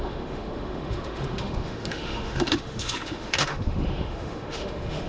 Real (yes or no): no